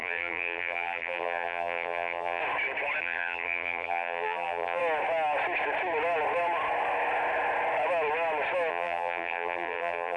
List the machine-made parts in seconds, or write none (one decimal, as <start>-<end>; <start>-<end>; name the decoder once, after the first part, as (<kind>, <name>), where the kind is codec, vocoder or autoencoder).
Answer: 0.0-2.4 (vocoder, BigVGAN v2); 3.0-4.8; 8.7-10.2